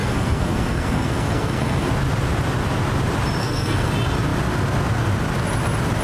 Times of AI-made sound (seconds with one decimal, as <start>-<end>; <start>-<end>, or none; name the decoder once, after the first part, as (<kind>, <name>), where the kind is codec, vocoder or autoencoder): 0.0-1.9 (codec, SNAC); 3.4-3.9